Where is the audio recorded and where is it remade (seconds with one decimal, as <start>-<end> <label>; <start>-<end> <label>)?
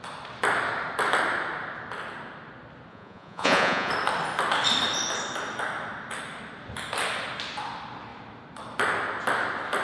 0.0-2.9 recorded; 2.9-3.9 remade; 3.9-9.8 recorded